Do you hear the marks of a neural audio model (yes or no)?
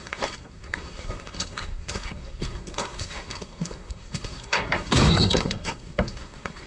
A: yes